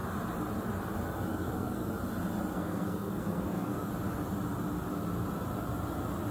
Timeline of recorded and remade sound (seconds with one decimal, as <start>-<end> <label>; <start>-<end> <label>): 0.0-1.3 recorded; 1.3-1.9 remade; 1.9-2.5 recorded; 2.5-3.9 remade; 3.9-6.3 recorded